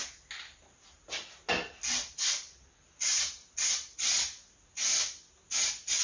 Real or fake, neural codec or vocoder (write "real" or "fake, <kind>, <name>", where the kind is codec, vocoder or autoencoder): real